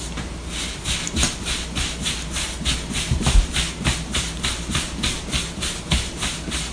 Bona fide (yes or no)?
yes